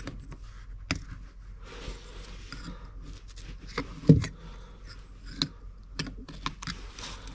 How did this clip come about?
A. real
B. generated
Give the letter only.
A